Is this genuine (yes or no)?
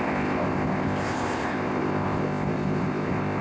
no